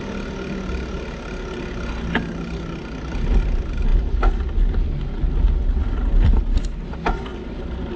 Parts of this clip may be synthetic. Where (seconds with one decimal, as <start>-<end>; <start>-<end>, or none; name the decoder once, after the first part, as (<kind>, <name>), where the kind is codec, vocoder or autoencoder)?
none